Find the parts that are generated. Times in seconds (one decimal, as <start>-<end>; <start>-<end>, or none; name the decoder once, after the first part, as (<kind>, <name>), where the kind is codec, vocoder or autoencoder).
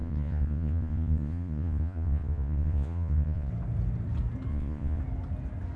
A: 0.0-3.5 (vocoder, Vocos); 4.5-5.0